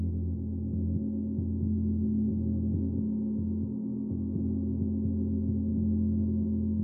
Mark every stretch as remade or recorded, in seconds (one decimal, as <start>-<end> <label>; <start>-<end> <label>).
0.0-5.7 recorded; 5.7-6.8 remade